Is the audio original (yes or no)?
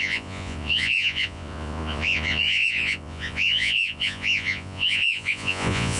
no